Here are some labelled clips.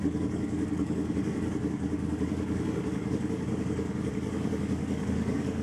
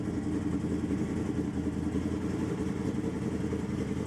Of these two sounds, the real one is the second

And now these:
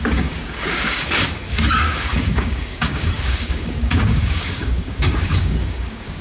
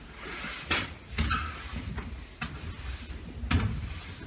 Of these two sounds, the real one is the second